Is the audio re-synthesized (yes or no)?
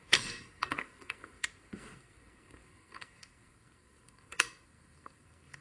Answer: yes